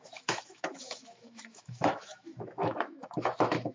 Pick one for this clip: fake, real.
fake